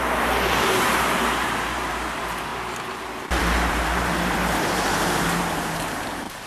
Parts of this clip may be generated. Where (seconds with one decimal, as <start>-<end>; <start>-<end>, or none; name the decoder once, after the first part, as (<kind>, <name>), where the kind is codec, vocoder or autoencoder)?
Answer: 0.0-6.5 (vocoder, BigVGAN v2)